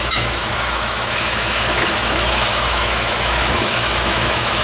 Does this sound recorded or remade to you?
remade